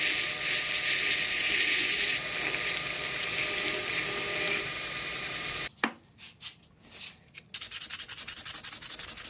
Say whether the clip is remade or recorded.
recorded